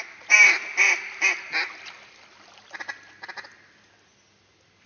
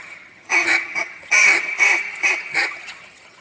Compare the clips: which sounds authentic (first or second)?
first